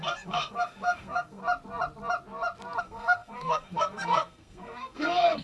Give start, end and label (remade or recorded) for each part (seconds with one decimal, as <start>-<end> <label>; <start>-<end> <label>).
0.0-1.4 remade; 1.4-2.8 recorded; 2.8-5.4 remade